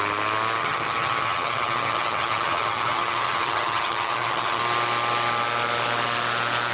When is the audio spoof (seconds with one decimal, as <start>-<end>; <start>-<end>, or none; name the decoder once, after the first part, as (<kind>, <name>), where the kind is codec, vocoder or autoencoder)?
0.6-4.6 (vocoder, HiFi-GAN)